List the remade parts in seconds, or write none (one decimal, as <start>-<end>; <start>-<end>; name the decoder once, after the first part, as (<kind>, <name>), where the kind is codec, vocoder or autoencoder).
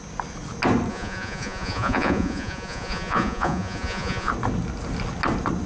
0.9-4.3 (vocoder, Vocos)